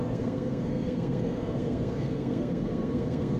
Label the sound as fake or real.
fake